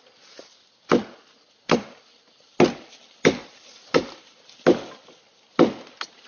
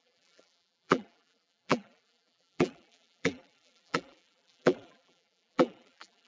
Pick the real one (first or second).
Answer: first